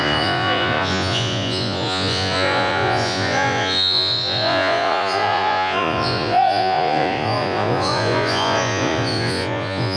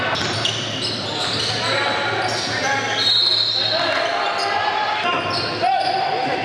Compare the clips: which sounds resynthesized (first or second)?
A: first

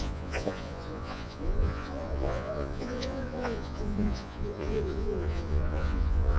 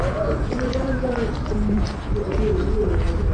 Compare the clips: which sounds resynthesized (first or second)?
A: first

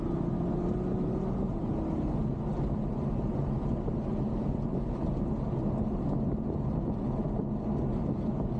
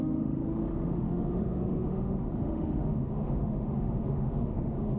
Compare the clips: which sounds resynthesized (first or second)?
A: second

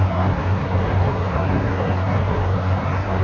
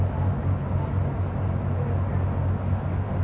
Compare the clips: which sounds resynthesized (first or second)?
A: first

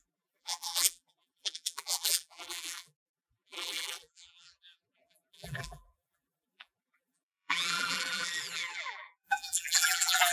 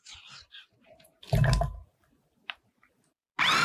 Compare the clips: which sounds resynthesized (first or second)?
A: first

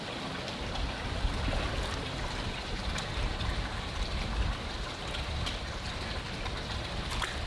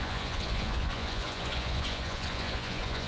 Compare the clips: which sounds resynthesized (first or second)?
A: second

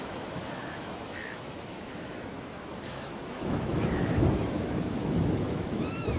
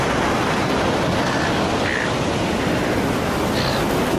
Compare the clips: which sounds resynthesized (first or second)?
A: first